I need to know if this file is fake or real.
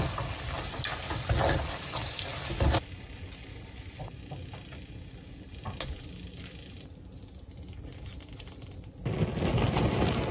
real